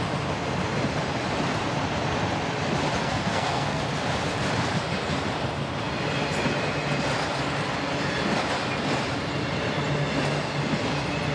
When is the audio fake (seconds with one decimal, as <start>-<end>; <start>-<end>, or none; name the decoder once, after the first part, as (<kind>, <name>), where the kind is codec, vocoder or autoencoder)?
3.0-3.8 (codec, SNAC)